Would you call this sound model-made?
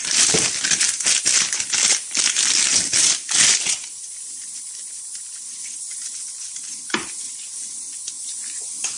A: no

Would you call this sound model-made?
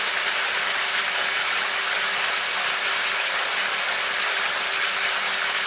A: no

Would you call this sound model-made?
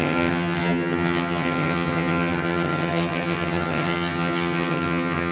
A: yes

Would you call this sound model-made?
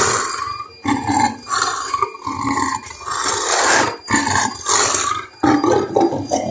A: no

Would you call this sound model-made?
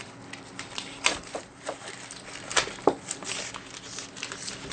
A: no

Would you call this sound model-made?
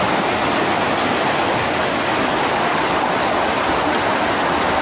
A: no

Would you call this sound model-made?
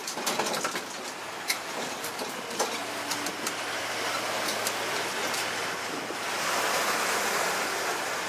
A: no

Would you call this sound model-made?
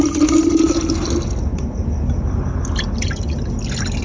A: no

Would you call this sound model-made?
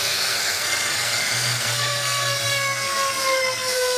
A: yes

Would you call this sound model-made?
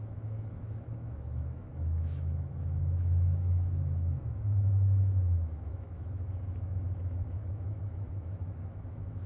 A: yes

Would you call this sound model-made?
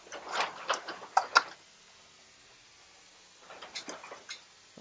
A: no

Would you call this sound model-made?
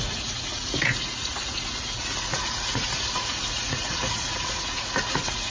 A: yes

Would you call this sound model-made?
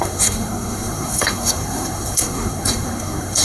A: yes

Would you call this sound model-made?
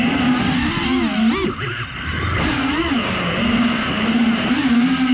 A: no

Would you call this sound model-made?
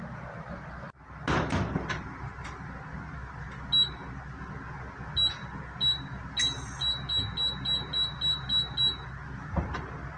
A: no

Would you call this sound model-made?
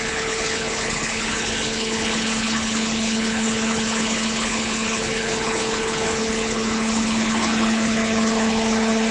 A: yes